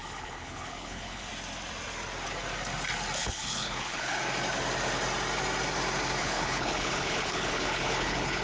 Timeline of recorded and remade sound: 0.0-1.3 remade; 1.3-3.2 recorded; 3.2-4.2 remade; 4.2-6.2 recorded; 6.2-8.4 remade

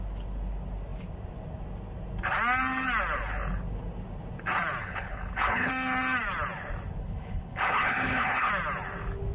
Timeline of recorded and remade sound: 0.0-4.8 recorded; 4.8-5.7 remade; 5.7-7.0 recorded; 7.0-8.5 remade; 8.5-9.3 recorded

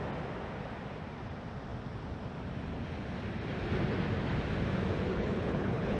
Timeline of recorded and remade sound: 0.0-5.1 recorded; 5.1-6.0 remade

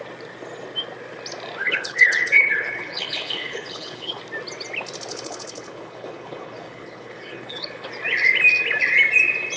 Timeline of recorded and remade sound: 0.0-1.6 recorded; 1.6-4.2 remade; 4.2-5.1 recorded; 5.1-7.9 remade; 7.9-9.6 recorded

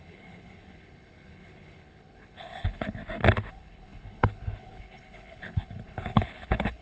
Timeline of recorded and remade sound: 0.0-3.0 remade; 3.0-3.5 recorded; 3.5-6.8 remade

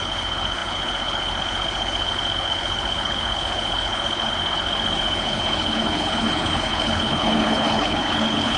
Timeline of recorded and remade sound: 0.0-8.6 remade